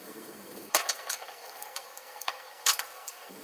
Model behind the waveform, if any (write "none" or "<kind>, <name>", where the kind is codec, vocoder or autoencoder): codec, SNAC